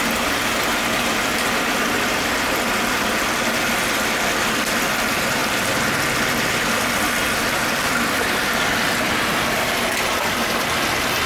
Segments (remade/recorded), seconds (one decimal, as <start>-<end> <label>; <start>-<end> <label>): 0.0-11.3 recorded